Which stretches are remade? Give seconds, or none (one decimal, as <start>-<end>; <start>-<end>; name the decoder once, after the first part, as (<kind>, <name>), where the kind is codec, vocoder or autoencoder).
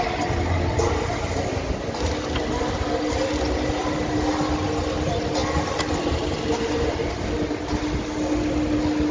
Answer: none